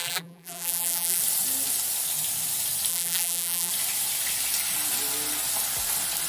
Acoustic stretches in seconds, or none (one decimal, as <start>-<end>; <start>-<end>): 1.2-2.9; 3.7-6.3